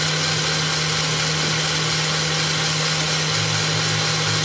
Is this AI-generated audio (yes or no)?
no